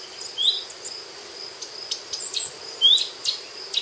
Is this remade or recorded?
recorded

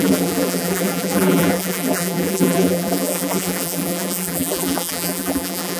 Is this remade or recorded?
remade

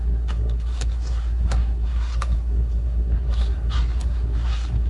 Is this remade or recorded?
remade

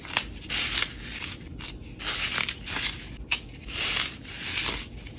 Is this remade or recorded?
recorded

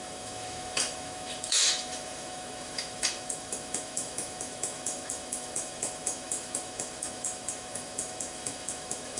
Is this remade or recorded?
remade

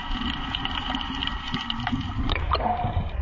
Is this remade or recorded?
remade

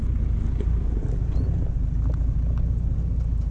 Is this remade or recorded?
recorded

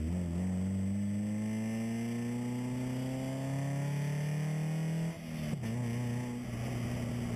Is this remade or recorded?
recorded